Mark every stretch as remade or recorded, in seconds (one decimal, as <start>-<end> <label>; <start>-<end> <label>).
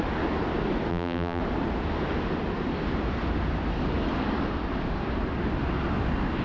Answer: 0.0-0.9 recorded; 0.9-1.4 remade; 1.4-6.4 recorded